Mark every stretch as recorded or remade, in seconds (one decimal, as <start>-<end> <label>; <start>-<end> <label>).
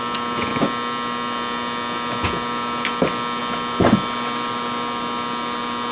0.0-5.9 recorded